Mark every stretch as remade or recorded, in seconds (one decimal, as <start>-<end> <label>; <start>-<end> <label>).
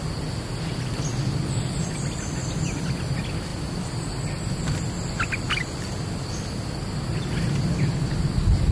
0.0-8.7 recorded